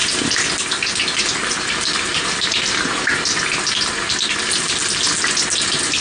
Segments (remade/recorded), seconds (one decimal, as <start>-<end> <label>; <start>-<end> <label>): 0.0-2.1 recorded; 2.1-3.6 remade; 3.6-6.0 recorded